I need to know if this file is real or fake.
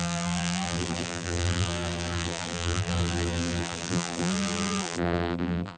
fake